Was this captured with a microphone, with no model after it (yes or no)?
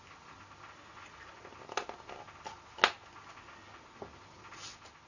yes